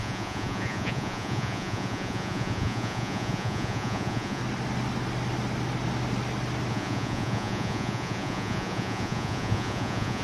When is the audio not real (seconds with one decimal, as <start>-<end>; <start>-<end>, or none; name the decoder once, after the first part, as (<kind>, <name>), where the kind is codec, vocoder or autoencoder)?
0.0-4.4 (vocoder, Vocos); 6.7-10.2